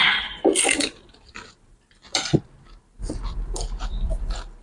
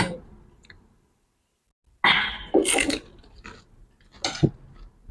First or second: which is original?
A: second